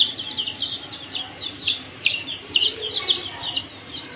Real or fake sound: fake